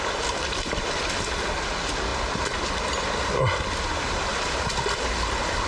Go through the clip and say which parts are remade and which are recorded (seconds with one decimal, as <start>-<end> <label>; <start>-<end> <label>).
0.0-5.7 recorded